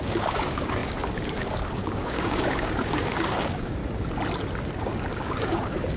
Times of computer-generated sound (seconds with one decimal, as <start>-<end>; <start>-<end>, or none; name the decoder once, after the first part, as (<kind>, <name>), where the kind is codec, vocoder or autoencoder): 0.0-3.8 (codec, DAC); 4.8-6.0